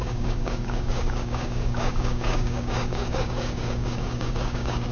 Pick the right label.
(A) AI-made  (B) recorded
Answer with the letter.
A